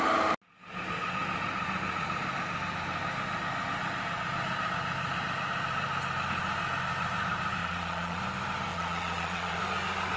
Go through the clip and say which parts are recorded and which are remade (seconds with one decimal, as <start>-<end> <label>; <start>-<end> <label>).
0.0-7.6 recorded; 7.6-8.2 remade; 8.2-8.7 recorded; 8.7-9.6 remade; 9.6-10.2 recorded